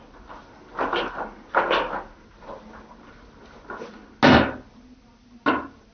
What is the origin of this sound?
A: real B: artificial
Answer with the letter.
A